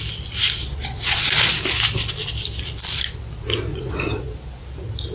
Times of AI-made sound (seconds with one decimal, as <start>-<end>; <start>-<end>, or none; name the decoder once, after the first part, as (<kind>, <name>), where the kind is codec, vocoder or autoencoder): 0.6-1.3 (vocoder, Vocos); 3.7-4.6